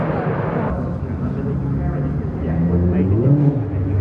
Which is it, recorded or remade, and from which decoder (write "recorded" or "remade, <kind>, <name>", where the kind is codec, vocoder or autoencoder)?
recorded